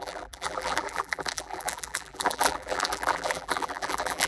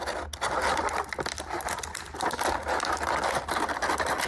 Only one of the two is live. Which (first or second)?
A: second